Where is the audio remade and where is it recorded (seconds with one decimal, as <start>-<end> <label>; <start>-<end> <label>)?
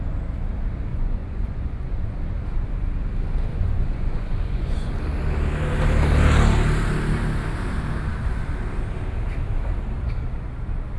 0.0-0.9 recorded; 0.9-2.2 remade; 2.2-3.5 recorded; 3.5-4.9 remade; 4.9-11.0 recorded